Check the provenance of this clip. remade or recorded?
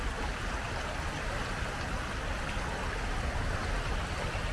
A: recorded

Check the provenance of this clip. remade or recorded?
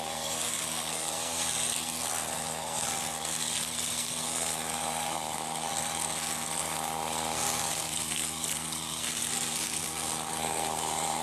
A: remade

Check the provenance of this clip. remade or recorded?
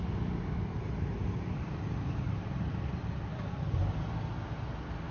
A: recorded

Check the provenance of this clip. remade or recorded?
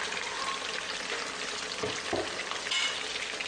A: recorded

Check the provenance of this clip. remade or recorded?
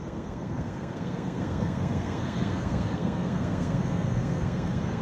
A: remade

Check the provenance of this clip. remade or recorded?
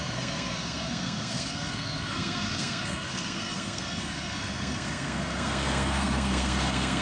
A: remade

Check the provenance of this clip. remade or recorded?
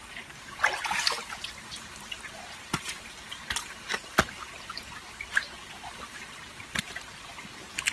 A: recorded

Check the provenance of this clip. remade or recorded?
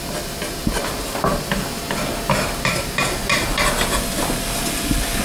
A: recorded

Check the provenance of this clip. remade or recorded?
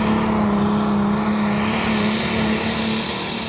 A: recorded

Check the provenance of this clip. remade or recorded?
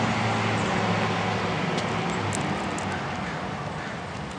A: recorded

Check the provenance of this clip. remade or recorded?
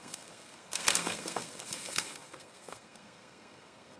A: remade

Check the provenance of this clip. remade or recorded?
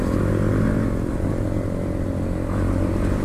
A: recorded